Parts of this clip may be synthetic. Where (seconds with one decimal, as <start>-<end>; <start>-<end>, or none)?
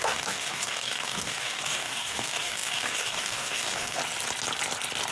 0.0-4.0